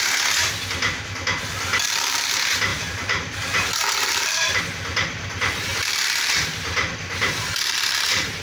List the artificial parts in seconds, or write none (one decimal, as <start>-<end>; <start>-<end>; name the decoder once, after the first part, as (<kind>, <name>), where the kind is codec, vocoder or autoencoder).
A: 1.7-2.3 (vocoder, BigVGAN v2); 2.7-4.6; 5.7-8.4